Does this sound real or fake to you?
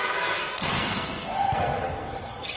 fake